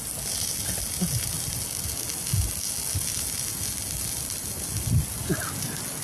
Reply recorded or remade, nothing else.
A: recorded